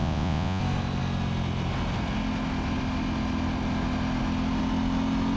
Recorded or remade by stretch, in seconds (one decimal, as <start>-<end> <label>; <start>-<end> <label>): 0.0-0.6 remade; 0.6-5.4 recorded